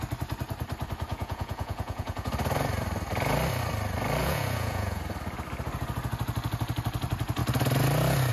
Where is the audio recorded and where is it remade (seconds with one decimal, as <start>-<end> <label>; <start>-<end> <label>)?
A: 0.0-1.1 recorded; 1.1-2.3 remade; 2.3-4.2 recorded; 4.2-5.0 remade; 5.0-8.3 recorded